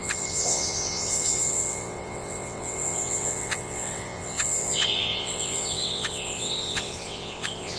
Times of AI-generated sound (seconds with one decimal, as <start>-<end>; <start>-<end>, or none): 0.0-7.8

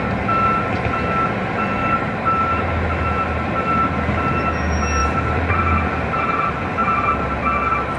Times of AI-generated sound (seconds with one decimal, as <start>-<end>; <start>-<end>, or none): 1.8-3.8; 5.0-5.6; 6.8-7.4